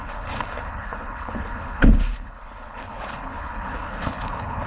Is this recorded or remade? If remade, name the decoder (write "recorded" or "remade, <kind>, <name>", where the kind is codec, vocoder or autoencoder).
remade, codec, HILCodec